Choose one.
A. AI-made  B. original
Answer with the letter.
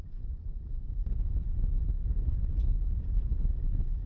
A